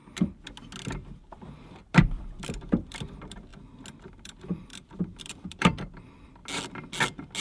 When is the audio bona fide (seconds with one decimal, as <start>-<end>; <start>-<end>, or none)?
0.0-1.2; 3.5-4.1; 6.4-7.4